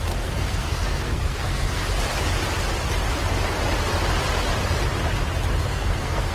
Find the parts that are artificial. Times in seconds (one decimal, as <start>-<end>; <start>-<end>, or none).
0.0-1.8; 5.6-6.3